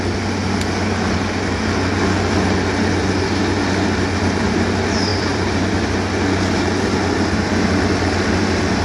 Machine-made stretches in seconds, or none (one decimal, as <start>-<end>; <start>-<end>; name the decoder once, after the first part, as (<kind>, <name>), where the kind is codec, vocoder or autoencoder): 5.1-5.7 (vocoder, BigVGAN v2)